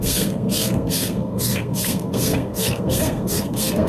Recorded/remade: remade